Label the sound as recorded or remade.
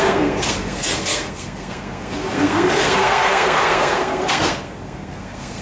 remade